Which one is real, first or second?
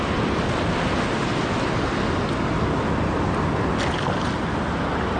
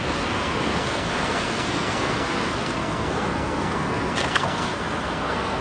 first